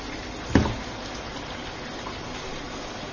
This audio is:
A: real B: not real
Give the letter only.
A